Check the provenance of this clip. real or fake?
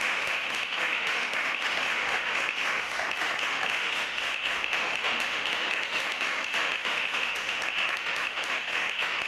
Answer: fake